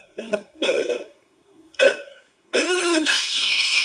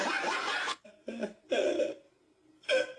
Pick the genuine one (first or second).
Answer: second